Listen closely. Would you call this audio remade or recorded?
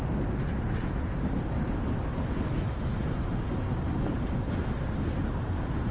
recorded